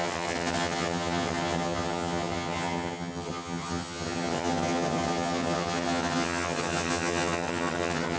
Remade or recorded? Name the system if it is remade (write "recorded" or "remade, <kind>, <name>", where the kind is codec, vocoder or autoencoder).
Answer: remade, vocoder, HiFi-GAN